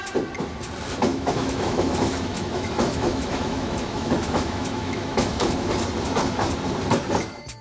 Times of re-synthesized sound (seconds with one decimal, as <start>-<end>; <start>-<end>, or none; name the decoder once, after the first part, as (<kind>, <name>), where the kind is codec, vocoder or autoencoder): 1.1-5.7 (autoencoder, DAC-VAE)